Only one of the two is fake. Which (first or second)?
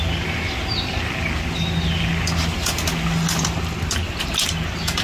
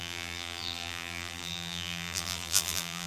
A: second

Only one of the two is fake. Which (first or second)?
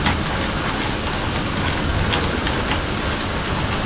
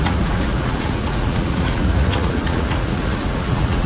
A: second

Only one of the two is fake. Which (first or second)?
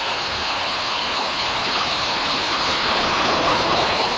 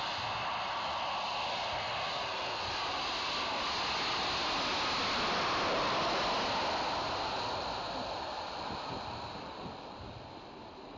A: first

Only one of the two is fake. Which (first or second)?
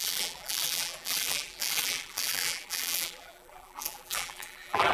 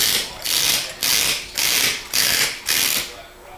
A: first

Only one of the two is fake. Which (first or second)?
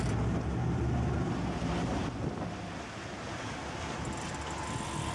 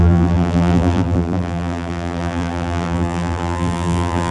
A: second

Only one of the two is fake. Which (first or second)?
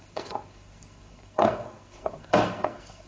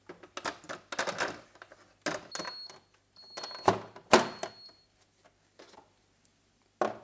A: first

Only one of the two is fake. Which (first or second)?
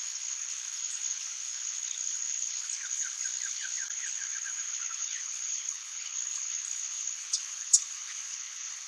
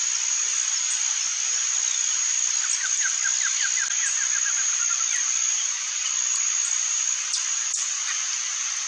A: first